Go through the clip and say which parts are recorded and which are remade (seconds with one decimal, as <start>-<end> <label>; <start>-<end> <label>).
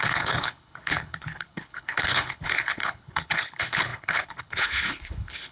0.0-5.5 remade